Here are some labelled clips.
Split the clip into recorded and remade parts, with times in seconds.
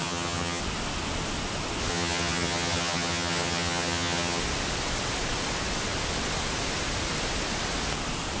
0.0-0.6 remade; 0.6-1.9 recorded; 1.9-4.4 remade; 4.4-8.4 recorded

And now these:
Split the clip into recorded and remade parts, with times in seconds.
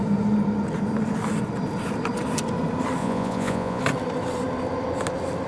0.0-3.0 recorded; 3.0-3.8 remade; 3.8-5.5 recorded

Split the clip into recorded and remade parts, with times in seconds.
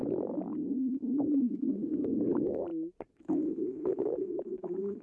0.0-0.9 recorded; 0.9-2.7 remade; 2.7-3.2 recorded; 3.2-5.0 remade